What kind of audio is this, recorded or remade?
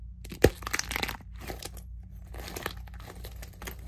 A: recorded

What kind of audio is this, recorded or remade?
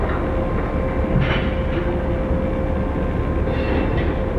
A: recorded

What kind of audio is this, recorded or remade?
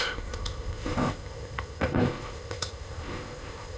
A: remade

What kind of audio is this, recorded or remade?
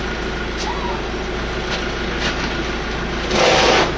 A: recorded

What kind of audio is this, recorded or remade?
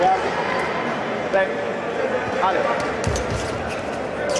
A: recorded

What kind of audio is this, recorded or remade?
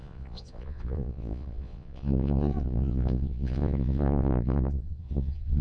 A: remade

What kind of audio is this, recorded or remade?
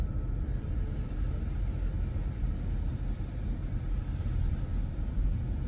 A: recorded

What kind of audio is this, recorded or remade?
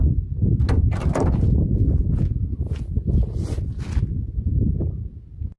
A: recorded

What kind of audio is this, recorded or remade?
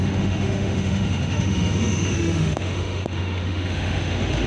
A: remade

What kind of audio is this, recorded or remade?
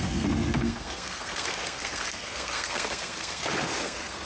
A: remade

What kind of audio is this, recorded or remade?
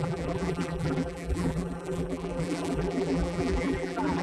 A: remade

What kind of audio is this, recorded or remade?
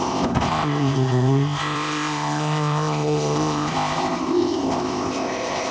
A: remade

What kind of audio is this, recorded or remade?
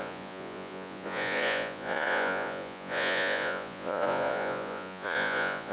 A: remade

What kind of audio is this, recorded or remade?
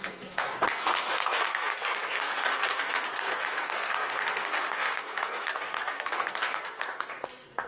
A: remade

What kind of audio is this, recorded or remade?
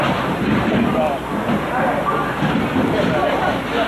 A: recorded